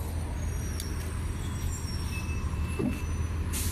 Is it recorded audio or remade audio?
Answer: recorded